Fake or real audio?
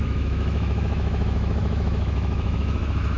fake